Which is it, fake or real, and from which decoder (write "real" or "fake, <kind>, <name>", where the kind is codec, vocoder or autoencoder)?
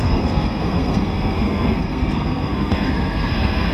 fake, codec, SNAC